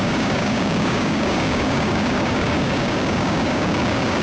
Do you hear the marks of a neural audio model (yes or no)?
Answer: yes